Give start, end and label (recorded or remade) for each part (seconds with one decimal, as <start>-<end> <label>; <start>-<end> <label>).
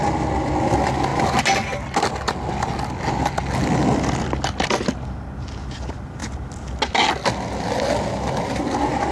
0.0-9.1 recorded